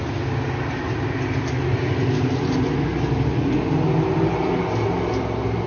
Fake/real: real